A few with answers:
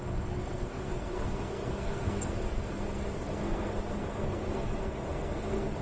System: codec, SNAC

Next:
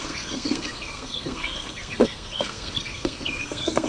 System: codec, SNAC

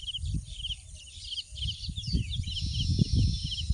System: none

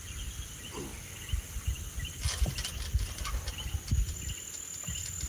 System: none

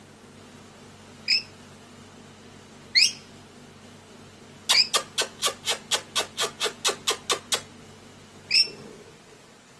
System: none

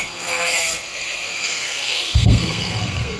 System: codec, SNAC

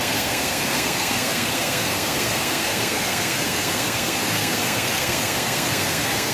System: codec, SNAC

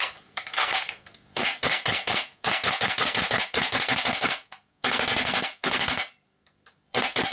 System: codec, SNAC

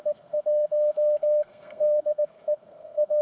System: codec, SNAC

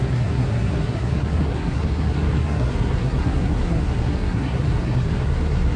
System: codec, SNAC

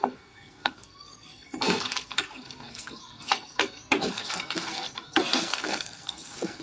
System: codec, SNAC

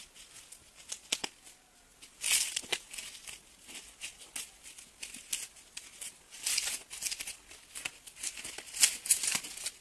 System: none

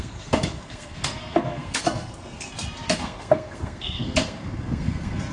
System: codec, SNAC